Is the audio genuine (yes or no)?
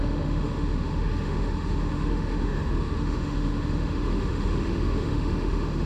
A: no